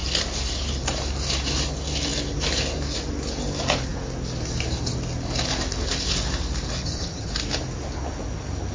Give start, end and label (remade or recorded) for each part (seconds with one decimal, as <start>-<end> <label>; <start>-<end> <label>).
0.0-6.8 recorded; 6.8-7.3 remade; 7.3-8.7 recorded